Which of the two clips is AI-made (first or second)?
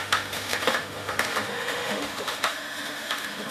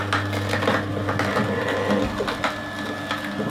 first